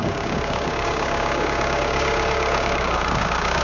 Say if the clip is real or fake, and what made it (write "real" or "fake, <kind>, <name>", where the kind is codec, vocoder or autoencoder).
fake, codec, DAC